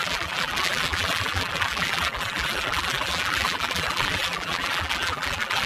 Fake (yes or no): yes